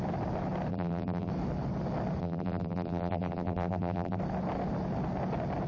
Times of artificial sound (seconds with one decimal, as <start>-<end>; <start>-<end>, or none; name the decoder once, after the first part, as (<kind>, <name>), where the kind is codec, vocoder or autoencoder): 0.7-1.3 (vocoder, BigVGAN v2); 2.2-4.2